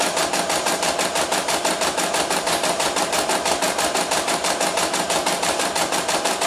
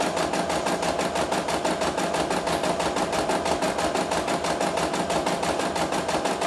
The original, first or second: second